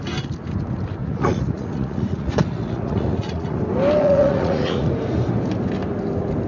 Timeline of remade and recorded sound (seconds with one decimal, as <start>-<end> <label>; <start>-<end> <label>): 0.0-1.0 recorded; 1.0-3.6 remade; 3.6-4.0 recorded; 4.0-4.9 remade; 4.9-6.5 recorded